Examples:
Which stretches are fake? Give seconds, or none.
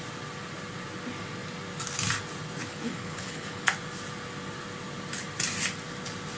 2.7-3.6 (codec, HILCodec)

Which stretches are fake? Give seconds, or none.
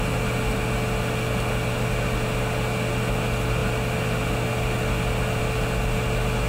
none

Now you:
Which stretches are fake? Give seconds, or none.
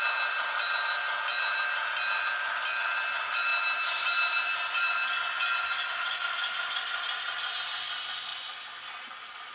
none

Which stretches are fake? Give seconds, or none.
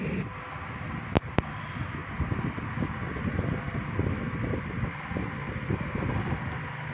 none